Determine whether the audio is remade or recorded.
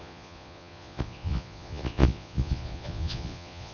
remade